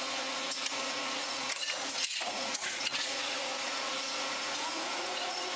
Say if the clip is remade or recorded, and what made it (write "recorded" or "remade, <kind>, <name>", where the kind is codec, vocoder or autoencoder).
remade, vocoder, Vocos